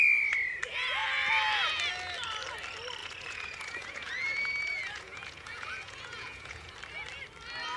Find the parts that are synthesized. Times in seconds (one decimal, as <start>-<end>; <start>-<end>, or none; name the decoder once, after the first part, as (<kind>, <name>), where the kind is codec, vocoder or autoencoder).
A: 3.0-6.7 (vocoder, Vocos)